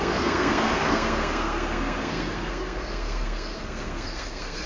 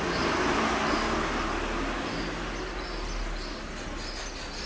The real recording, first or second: second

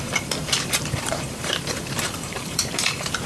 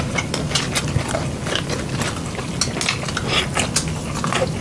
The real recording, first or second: second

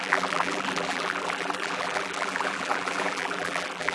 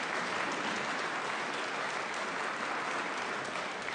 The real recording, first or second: second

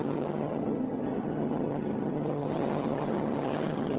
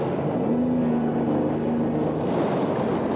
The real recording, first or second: second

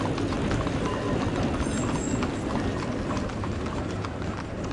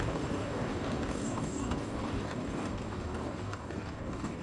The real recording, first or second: first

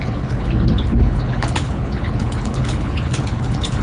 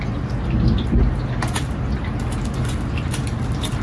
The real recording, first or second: second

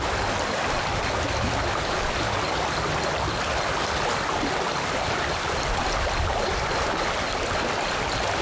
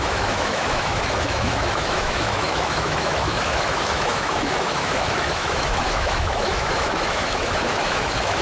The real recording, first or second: first